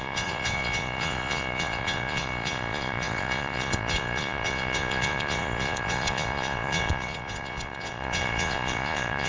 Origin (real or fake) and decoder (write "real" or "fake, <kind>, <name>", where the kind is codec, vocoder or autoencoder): fake, vocoder, Vocos